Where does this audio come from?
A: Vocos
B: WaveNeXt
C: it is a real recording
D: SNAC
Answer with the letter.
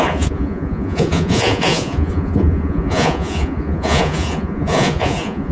A